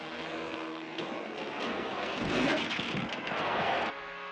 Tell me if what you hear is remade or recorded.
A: remade